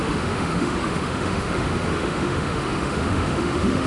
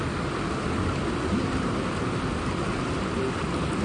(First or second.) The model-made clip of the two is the first